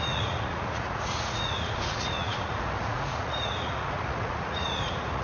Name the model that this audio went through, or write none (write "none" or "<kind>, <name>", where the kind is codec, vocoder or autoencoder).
vocoder, Vocos